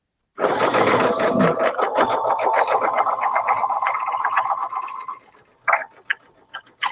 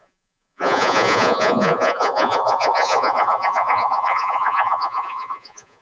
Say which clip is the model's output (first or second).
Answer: second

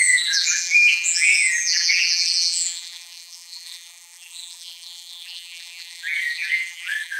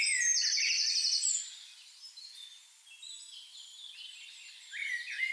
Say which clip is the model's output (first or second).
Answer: first